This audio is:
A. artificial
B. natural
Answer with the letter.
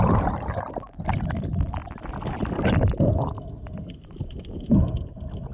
B